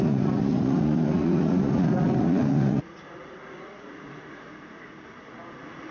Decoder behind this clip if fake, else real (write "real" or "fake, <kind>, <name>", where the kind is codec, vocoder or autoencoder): fake, vocoder, Vocos